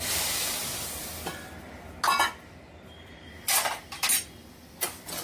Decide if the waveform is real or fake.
real